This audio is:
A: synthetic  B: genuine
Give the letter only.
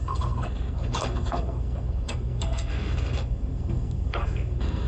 A